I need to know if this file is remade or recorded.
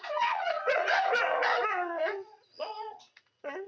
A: remade